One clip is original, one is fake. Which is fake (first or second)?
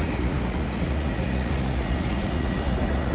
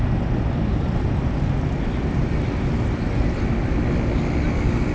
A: first